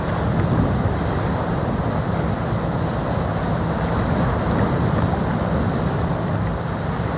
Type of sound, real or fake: real